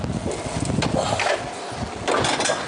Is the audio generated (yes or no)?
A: no